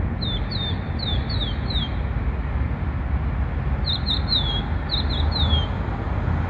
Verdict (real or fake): real